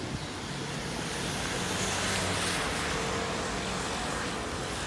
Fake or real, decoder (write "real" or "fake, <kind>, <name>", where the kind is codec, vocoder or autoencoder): real